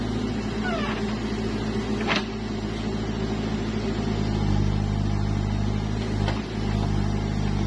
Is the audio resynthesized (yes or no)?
no